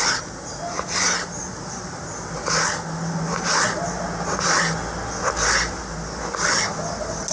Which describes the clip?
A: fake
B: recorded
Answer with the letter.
B